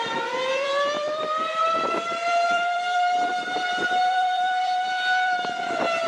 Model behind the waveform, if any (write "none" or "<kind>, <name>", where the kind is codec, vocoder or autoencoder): vocoder, BigVGAN v2